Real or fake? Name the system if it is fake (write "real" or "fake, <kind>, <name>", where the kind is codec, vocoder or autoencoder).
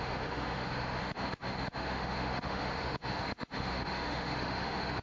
fake, autoencoder, DAC-VAE